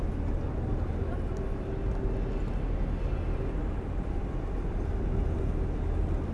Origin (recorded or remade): recorded